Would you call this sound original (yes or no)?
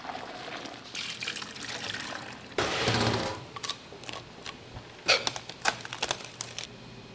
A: no